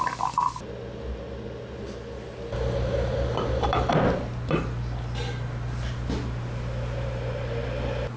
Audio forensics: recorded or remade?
recorded